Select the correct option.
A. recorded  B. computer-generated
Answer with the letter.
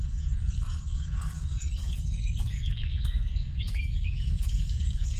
B